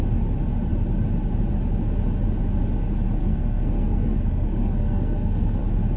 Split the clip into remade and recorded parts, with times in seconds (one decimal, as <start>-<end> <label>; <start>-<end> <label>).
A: 0.0-3.2 recorded; 3.2-5.6 remade; 5.6-6.0 recorded